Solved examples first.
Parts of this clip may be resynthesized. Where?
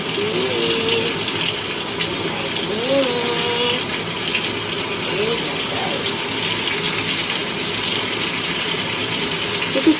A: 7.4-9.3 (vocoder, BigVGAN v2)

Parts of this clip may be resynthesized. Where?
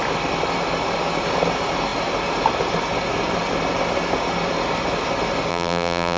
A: 5.5-6.2 (vocoder, BigVGAN v2)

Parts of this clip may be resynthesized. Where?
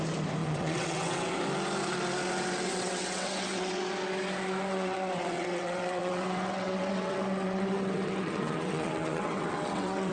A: 0.4-1.4 (vocoder, WaveNeXt); 2.7-3.7; 4.7-10.1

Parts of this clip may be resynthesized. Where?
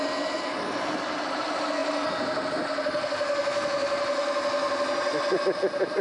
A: none